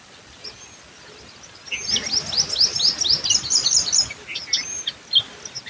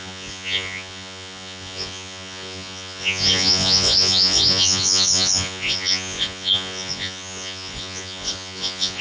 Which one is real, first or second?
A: first